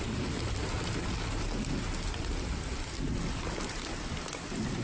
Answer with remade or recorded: recorded